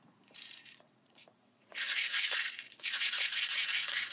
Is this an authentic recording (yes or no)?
no